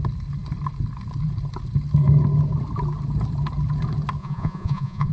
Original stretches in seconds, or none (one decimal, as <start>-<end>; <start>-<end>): 0.0-4.2